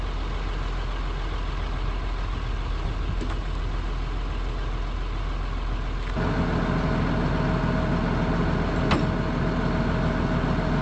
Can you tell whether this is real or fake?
real